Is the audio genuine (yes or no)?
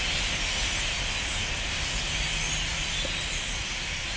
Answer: yes